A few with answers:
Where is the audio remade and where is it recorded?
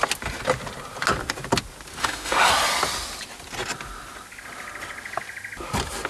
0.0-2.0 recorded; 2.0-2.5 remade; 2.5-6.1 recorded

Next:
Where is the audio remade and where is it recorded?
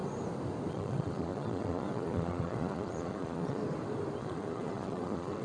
0.0-0.7 recorded; 0.7-3.6 remade; 3.6-4.2 recorded; 4.2-5.4 remade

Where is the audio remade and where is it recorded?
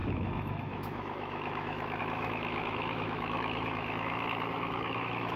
0.0-5.4 remade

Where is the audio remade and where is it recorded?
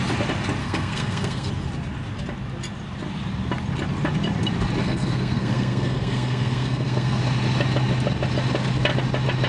0.0-0.6 recorded; 0.6-1.5 remade; 1.5-4.8 recorded; 4.8-7.2 remade; 7.2-9.5 recorded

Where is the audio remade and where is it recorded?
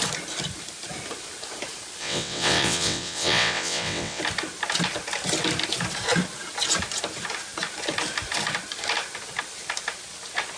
0.0-2.0 recorded; 2.0-4.2 remade; 4.2-10.6 recorded